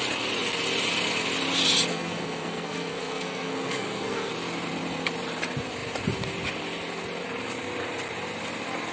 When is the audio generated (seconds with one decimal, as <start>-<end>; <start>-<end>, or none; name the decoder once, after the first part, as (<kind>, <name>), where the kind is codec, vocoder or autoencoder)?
1.9-4.3 (codec, SNAC)